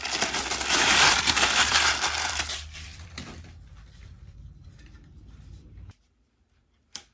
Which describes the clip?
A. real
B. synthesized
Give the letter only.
B